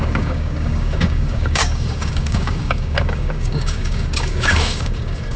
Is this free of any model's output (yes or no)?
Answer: no